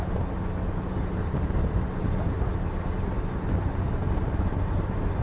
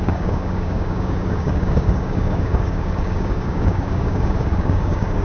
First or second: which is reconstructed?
second